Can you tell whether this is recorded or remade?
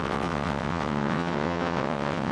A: remade